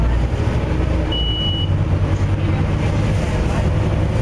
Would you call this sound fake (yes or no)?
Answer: no